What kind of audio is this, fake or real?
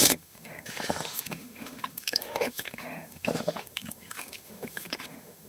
fake